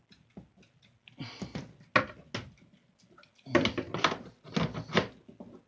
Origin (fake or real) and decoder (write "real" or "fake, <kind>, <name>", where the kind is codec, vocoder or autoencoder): real